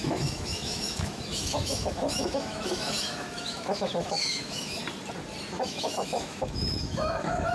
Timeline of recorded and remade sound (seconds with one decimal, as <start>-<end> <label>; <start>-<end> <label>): 0.0-4.8 remade; 4.8-5.6 recorded; 5.6-7.5 remade